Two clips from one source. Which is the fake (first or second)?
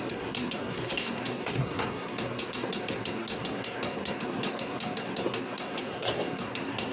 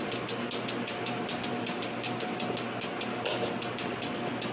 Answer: first